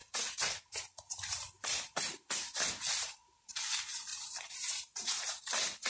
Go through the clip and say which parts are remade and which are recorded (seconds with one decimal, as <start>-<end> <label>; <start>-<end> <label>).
0.0-3.5 remade; 3.5-4.1 recorded; 4.1-5.9 remade